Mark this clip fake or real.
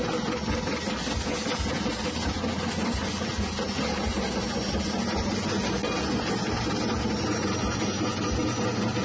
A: real